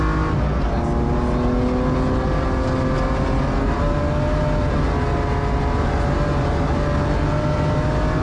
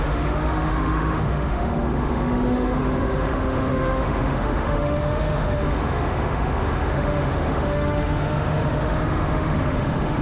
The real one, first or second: first